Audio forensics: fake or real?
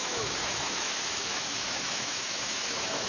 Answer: fake